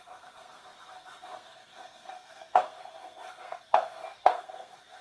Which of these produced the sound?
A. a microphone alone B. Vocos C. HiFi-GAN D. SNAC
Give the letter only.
D